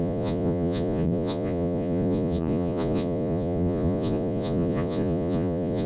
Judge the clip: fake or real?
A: fake